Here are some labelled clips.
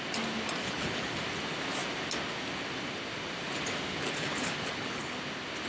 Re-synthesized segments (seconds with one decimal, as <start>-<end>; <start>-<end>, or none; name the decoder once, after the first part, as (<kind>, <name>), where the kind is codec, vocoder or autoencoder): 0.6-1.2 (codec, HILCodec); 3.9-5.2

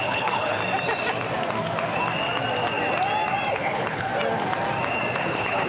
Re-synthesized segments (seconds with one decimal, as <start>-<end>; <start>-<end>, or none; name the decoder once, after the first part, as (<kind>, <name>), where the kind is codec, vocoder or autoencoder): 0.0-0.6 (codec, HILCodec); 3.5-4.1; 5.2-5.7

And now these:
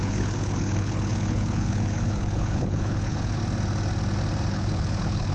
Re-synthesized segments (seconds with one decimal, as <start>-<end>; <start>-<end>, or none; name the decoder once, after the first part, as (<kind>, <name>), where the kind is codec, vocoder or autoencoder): 0.0-3.4 (codec, HILCodec); 4.5-5.3

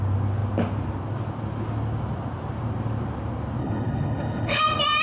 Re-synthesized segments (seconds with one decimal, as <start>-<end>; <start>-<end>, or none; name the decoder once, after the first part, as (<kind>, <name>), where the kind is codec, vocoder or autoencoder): 3.6-4.6 (codec, HILCodec)

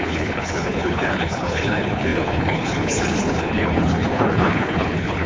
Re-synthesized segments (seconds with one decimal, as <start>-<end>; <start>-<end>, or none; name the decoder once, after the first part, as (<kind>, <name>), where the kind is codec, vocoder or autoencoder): 0.0-5.3 (codec, HILCodec)